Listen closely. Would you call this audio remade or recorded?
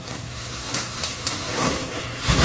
remade